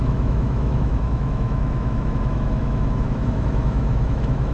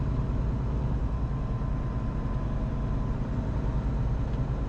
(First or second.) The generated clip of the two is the first